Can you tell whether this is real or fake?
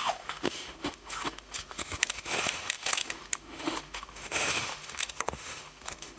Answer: fake